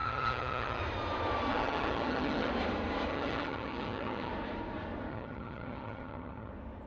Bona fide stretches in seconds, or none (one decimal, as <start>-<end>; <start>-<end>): 0.8-1.5; 2.5-3.1; 4.3-5.1; 6.5-6.9